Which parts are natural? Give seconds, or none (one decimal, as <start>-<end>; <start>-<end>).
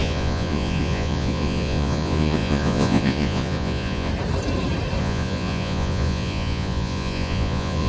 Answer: 4.1-5.0